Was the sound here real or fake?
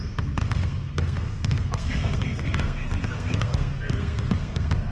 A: fake